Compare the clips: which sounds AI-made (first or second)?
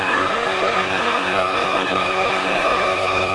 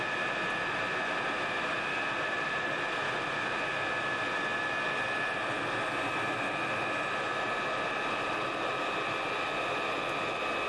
first